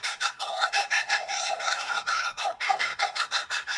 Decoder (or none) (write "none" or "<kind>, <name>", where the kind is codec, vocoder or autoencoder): codec, SNAC